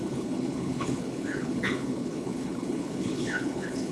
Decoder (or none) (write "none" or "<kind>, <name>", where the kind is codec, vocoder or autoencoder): codec, HILCodec